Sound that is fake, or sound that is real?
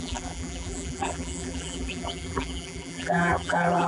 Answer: fake